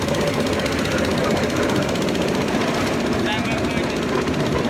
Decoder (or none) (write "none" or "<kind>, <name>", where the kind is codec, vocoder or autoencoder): none